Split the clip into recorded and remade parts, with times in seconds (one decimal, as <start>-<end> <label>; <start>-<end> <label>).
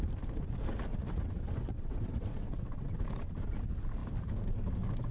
0.0-0.9 recorded; 0.9-3.0 remade; 3.0-5.1 recorded